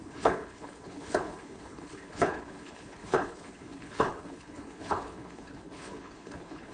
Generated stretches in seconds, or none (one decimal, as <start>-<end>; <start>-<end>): 0.0-6.7